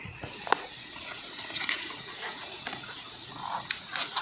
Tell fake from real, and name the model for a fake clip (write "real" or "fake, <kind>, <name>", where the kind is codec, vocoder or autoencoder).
fake, vocoder, Vocos